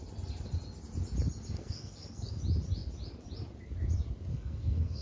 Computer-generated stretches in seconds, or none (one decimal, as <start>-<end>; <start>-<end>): 1.6-2.4; 4.3-5.0